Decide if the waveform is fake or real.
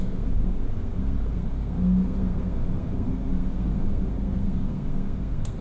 fake